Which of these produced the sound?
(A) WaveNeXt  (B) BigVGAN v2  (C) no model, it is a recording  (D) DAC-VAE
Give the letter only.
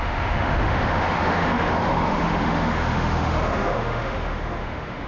D